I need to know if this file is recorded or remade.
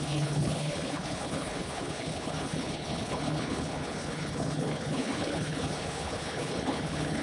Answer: remade